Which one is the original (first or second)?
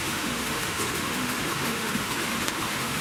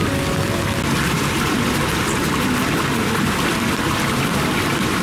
second